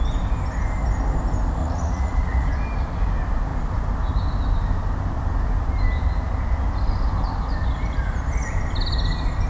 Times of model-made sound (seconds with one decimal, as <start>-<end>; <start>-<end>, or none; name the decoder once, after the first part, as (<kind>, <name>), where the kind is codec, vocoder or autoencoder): 1.6-2.5 (vocoder, Vocos)